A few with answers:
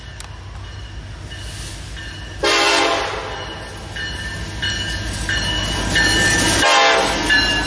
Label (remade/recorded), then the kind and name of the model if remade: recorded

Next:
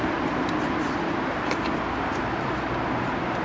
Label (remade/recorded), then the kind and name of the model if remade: recorded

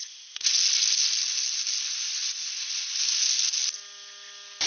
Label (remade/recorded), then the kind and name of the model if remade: recorded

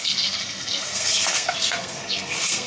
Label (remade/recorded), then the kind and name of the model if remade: remade, codec, SNAC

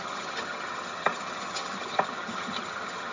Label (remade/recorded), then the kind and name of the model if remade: remade, vocoder, HiFi-GAN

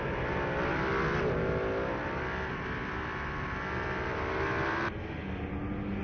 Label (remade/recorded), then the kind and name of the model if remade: recorded